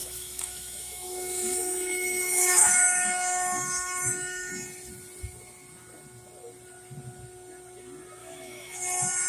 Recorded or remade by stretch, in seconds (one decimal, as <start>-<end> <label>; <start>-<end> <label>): 0.0-4.5 remade; 4.5-8.2 recorded; 8.2-9.3 remade